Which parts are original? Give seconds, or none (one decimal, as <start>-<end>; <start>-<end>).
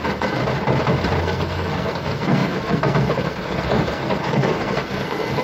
0.4-1.2